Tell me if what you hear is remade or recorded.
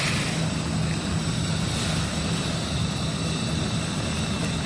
recorded